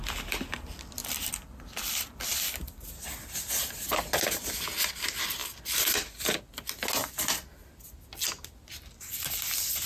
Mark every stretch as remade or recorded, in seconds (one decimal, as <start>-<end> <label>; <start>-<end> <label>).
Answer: 0.0-1.0 recorded; 1.0-2.9 remade; 2.9-5.4 recorded; 5.4-6.4 remade; 6.4-7.0 recorded; 7.0-7.7 remade; 7.7-9.9 recorded